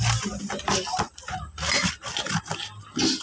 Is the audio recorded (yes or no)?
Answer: yes